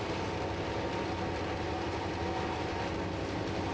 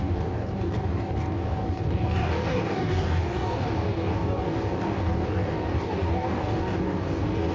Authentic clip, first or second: first